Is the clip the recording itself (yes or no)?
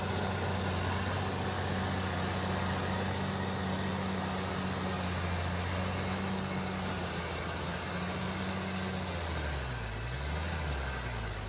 yes